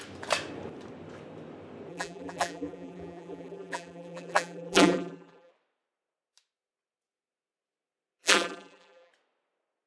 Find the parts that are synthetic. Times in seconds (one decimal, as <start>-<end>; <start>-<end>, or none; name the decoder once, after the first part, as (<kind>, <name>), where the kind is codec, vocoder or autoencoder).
1.9-5.5 (vocoder, BigVGAN v2); 8.2-9.1